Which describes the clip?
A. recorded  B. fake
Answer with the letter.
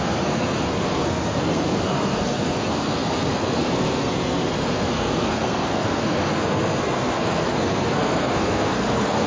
B